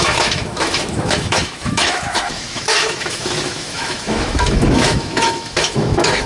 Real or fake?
fake